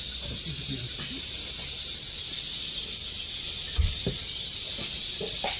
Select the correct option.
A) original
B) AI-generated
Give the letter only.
B